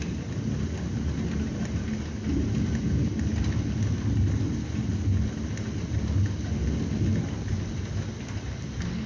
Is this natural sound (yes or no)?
yes